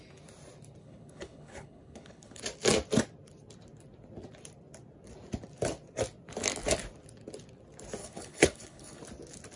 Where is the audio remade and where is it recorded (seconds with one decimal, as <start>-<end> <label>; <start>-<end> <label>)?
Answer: 0.0-0.8 recorded; 0.8-2.4 remade; 2.4-8.0 recorded; 8.0-9.0 remade; 9.0-9.6 recorded